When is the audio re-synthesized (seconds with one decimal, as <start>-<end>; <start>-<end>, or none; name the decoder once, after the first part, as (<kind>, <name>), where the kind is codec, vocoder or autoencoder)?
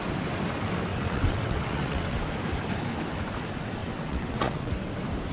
0.9-2.2 (vocoder, WaveNeXt); 3.8-4.7